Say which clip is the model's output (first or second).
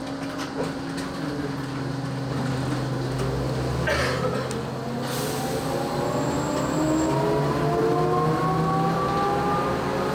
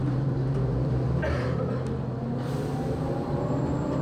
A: second